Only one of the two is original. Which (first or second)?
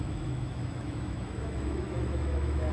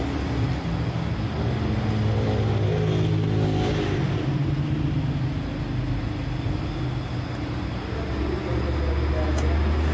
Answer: second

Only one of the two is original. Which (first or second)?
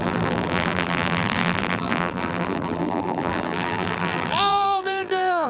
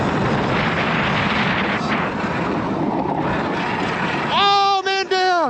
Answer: second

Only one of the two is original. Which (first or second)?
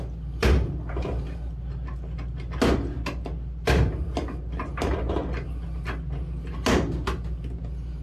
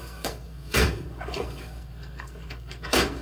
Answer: first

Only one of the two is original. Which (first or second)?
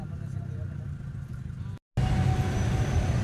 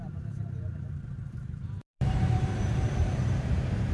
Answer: first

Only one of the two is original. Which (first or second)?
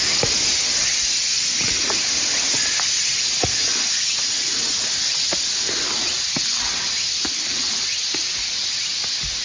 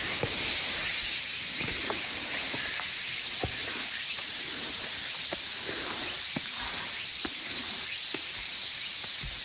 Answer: first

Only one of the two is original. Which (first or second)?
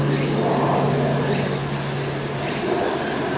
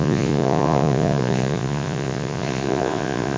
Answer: first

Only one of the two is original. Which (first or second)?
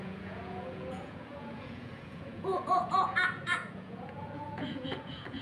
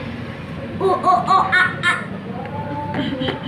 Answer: second